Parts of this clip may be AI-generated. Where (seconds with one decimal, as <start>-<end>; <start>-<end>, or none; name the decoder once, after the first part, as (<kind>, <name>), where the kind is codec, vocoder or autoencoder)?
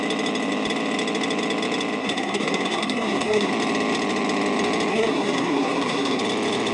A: 2.0-3.5 (codec, SNAC); 4.9-6.2